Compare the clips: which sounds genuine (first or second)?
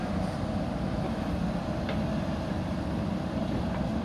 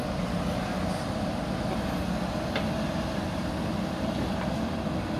second